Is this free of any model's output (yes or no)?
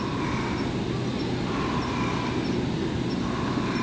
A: yes